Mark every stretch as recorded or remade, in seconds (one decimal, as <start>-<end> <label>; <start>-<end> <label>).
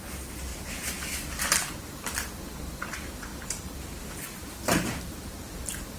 0.0-0.5 remade; 0.5-1.3 recorded; 1.3-6.0 remade